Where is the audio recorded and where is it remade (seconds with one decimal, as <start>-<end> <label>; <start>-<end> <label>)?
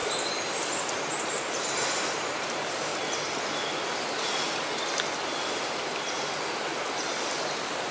0.0-1.1 recorded; 1.1-2.9 remade; 2.9-7.9 recorded